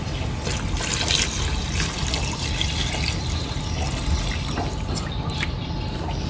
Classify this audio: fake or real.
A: real